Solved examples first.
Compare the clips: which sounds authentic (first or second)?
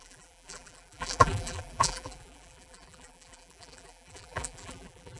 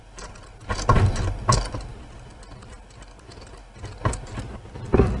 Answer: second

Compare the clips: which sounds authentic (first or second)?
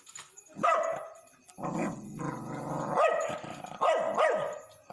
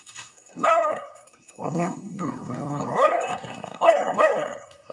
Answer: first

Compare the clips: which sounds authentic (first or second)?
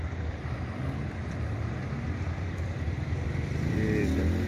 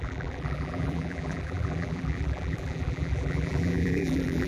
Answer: first